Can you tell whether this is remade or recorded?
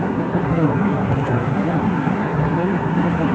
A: remade